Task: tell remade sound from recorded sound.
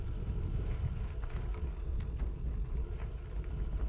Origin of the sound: recorded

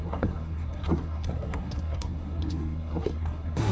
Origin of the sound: remade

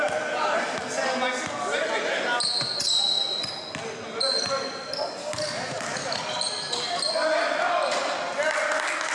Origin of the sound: recorded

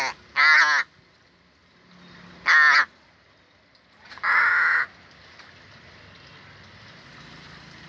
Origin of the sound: recorded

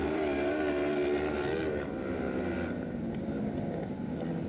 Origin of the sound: recorded